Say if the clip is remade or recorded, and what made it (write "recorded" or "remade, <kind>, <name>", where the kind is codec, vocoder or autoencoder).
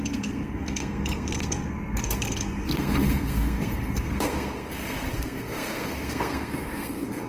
remade, codec, SNAC